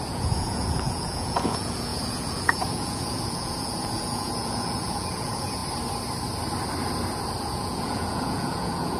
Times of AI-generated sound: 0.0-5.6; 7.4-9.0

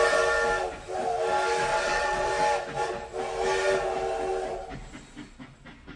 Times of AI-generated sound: 1.7-2.3

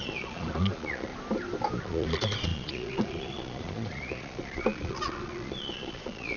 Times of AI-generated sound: 0.0-1.1; 1.8-6.4